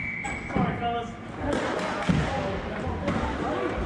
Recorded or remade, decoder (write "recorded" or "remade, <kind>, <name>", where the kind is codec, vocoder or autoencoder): recorded